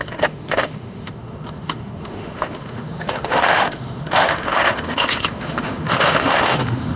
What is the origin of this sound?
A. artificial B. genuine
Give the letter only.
A